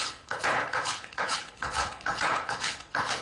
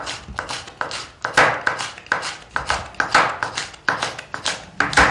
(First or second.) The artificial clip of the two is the first